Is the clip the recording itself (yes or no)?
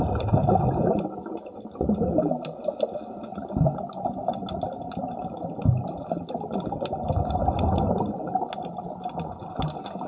yes